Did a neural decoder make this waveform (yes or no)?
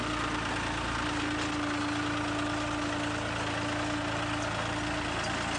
no